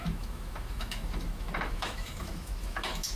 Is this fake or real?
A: fake